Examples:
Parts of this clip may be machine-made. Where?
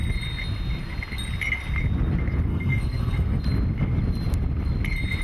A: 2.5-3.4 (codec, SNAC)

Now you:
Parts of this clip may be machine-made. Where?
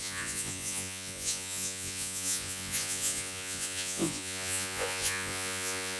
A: 0.0-6.0 (vocoder, Vocos)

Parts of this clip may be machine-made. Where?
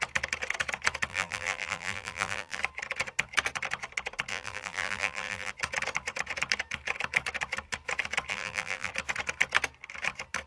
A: 1.1-2.6 (vocoder, BigVGAN v2); 4.3-5.5; 8.3-8.9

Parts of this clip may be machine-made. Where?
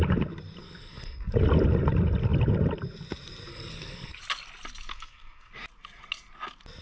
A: 0.6-1.3 (codec, SNAC); 3.5-4.2; 4.9-5.5